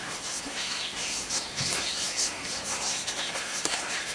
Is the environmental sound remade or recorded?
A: remade